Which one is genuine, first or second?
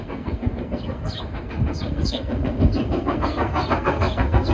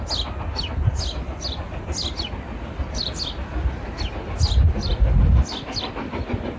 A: second